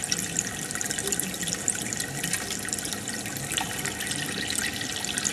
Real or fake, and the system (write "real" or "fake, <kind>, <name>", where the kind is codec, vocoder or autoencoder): real